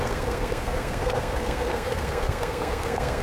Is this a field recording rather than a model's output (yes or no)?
no